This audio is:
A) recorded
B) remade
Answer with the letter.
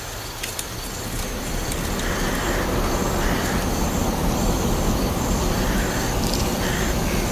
A